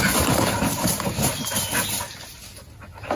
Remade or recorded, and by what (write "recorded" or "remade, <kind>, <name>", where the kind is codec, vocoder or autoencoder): recorded